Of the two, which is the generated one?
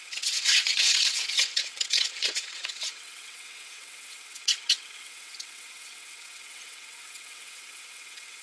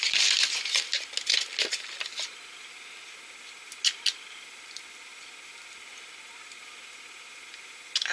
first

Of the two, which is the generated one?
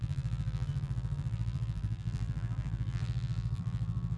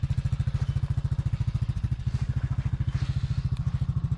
first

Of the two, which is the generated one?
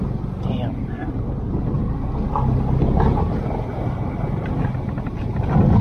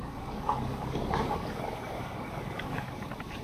second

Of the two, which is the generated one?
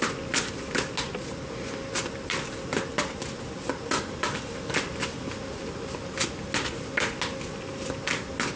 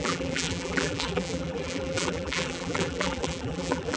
second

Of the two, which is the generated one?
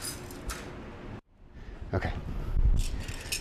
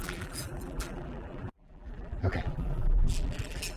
second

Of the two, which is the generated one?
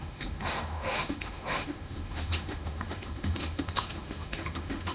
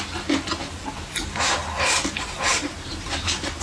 first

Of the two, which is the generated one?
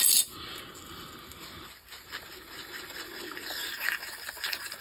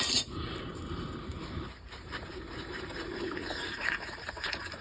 second